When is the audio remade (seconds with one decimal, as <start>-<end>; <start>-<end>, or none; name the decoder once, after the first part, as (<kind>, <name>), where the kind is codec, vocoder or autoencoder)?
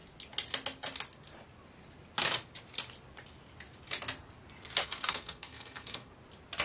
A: 4.8-6.1 (codec, SNAC)